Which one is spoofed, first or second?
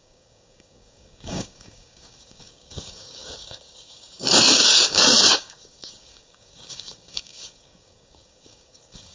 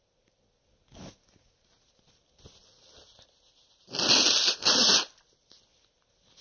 first